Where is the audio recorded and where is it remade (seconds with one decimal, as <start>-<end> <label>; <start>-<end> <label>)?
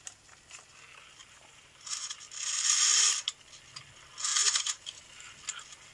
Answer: 0.0-1.2 recorded; 1.2-2.2 remade; 2.2-4.3 recorded; 4.3-5.0 remade; 5.0-5.9 recorded